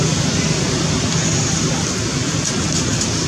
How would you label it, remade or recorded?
recorded